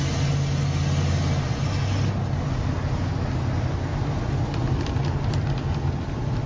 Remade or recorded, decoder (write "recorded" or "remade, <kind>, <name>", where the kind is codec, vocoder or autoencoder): recorded